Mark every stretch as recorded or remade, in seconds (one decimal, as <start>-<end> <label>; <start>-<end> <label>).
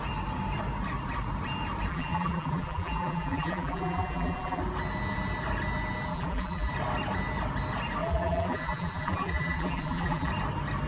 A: 0.0-1.9 recorded; 1.9-4.6 remade; 4.6-6.1 recorded; 6.1-6.7 remade; 6.7-8.0 recorded; 8.0-10.3 remade; 10.3-10.9 recorded